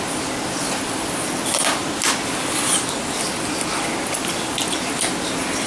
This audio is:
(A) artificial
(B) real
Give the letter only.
B